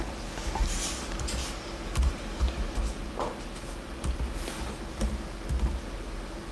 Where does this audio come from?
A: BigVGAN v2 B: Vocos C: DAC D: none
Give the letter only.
D